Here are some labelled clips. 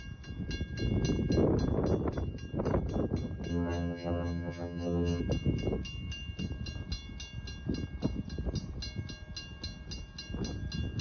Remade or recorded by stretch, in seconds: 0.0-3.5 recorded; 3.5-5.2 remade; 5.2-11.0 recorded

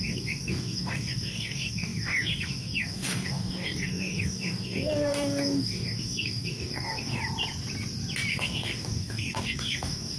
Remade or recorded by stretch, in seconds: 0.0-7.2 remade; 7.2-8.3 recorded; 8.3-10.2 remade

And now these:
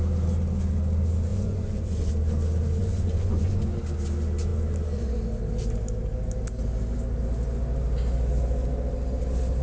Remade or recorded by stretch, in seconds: 0.0-1.3 recorded; 1.3-2.1 remade; 2.1-2.8 recorded; 2.8-3.8 remade; 3.8-9.6 recorded

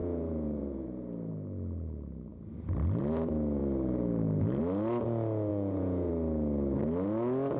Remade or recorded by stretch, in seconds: 0.0-1.3 remade; 1.3-5.5 recorded; 5.5-6.1 remade; 6.1-7.6 recorded

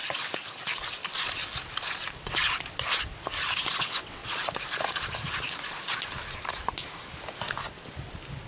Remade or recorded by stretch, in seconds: 0.0-3.8 recorded; 3.8-4.2 remade; 4.2-8.5 recorded

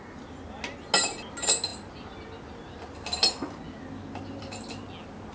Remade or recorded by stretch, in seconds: 0.0-5.3 recorded

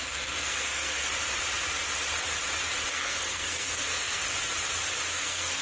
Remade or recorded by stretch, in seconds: 0.0-1.0 remade; 1.0-2.9 recorded; 2.9-4.2 remade; 4.2-5.1 recorded; 5.1-5.6 remade